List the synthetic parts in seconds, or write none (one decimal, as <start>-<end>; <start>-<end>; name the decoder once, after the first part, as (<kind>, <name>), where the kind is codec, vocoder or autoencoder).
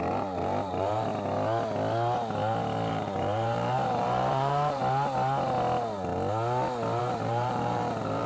0.0-1.1 (vocoder, BigVGAN v2); 2.9-4.8; 7.0-8.3